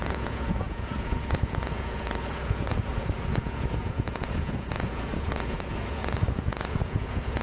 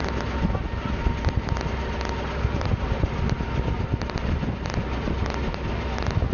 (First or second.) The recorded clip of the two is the second